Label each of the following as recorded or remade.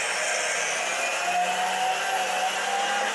recorded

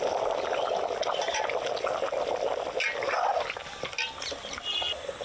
recorded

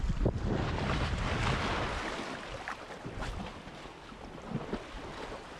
recorded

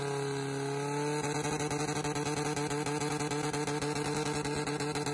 recorded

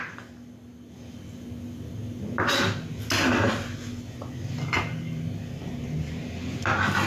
recorded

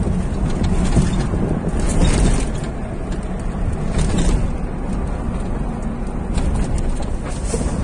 recorded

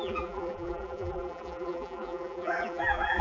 remade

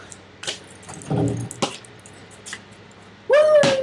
recorded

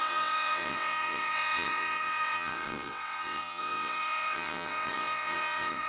remade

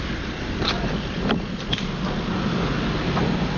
recorded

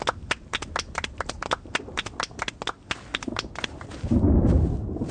recorded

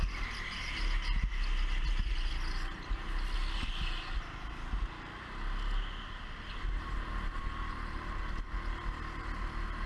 recorded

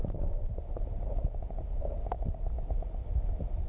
remade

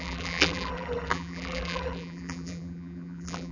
remade